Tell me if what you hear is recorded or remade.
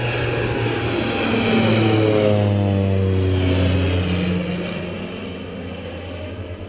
recorded